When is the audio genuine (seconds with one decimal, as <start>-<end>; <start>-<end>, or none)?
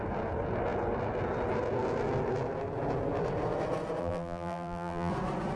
0.0-4.0; 5.1-5.6